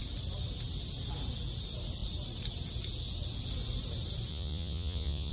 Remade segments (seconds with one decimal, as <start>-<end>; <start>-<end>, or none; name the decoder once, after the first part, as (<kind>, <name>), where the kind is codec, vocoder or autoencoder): 4.3-5.3 (vocoder, Vocos)